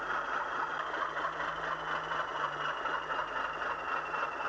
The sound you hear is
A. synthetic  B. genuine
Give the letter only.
B